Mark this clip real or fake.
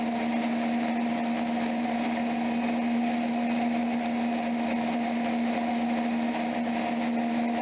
real